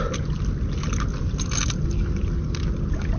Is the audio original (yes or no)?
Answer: yes